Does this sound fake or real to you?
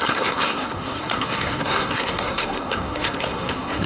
fake